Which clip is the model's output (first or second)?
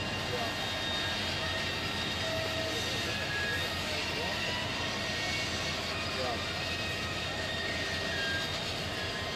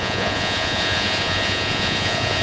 second